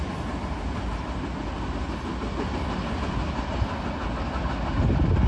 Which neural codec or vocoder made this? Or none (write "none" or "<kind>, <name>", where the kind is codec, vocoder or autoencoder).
none